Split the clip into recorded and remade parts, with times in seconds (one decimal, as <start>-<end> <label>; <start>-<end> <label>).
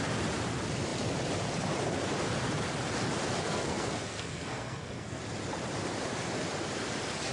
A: 0.0-3.4 recorded; 3.4-5.2 remade; 5.2-7.3 recorded